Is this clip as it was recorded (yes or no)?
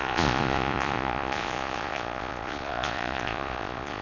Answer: no